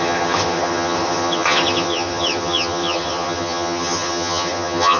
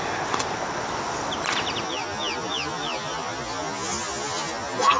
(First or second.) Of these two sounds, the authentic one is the second